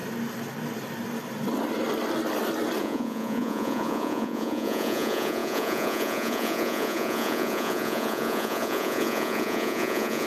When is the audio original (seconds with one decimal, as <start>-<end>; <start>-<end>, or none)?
0.0-2.8